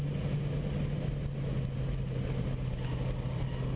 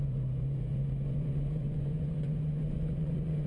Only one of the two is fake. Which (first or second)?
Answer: second